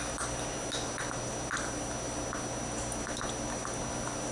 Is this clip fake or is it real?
real